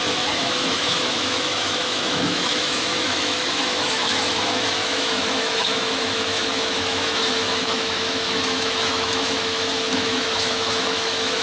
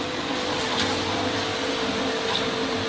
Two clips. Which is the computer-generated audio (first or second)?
first